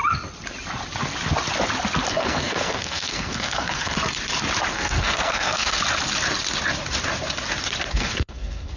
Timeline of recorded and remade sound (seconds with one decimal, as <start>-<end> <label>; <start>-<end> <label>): 0.0-2.1 recorded; 2.1-4.0 remade; 4.0-4.7 recorded; 4.7-5.8 remade; 5.8-7.9 recorded; 7.9-8.8 remade